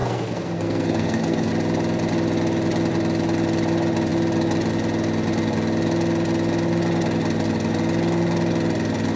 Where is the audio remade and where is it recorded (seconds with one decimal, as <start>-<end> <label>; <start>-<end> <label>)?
0.0-1.5 remade; 1.5-9.2 recorded